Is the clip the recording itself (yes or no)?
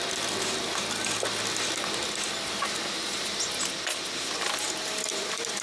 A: yes